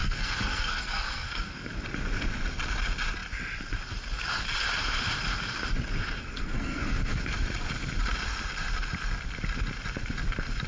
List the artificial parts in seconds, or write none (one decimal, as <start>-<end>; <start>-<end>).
0.0-1.7; 6.2-7.2

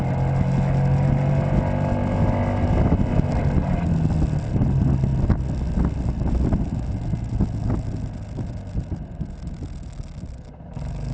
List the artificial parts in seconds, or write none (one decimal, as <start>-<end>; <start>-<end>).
none

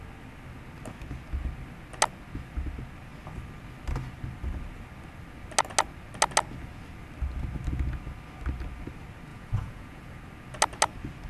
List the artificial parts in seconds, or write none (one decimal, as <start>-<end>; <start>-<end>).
9.3-10.2

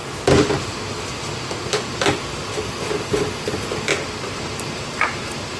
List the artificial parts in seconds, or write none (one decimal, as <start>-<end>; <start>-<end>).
3.9-5.6

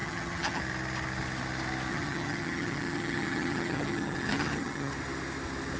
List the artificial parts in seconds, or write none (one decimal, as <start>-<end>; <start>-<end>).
0.0-0.6; 1.9-4.9

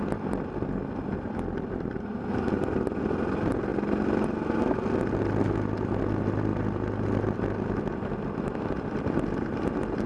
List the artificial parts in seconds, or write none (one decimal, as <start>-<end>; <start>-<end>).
none

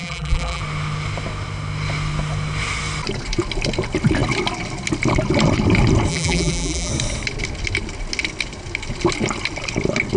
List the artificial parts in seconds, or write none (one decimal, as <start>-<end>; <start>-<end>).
0.0-0.6; 6.1-6.9